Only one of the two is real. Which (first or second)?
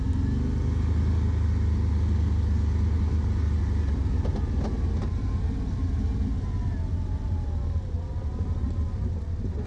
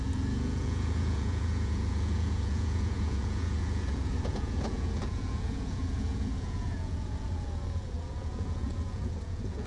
first